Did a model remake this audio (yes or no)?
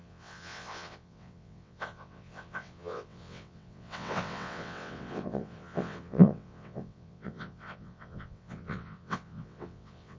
yes